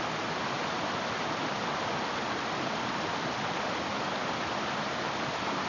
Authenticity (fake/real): real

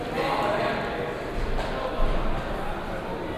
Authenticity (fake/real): real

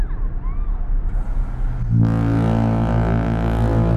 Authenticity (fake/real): real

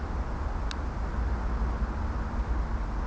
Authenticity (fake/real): real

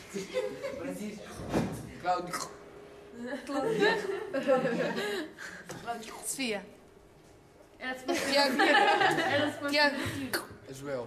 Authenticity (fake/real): real